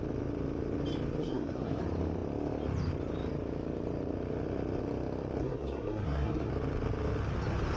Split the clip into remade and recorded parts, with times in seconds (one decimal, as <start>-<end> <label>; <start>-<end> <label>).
0.0-1.2 recorded; 1.2-1.8 remade; 1.8-5.4 recorded; 5.4-6.5 remade; 6.5-7.8 recorded